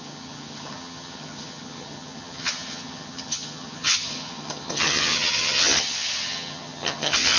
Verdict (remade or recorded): remade